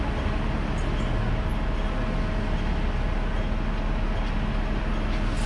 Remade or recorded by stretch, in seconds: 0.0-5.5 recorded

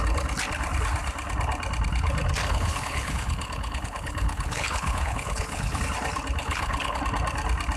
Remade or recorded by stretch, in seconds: 0.0-2.4 recorded; 2.4-5.8 remade; 5.8-6.4 recorded; 6.4-7.0 remade; 7.0-7.8 recorded

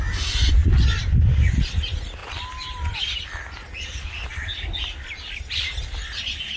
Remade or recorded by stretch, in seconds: 0.0-6.6 recorded

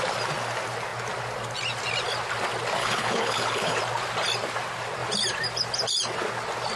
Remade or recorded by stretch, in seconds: 0.0-2.8 recorded; 2.8-3.8 remade; 3.8-6.8 recorded

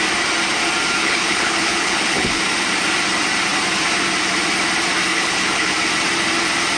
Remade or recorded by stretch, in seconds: 0.0-1.0 recorded; 1.0-2.4 remade; 2.4-5.1 recorded; 5.1-5.7 remade; 5.7-6.8 recorded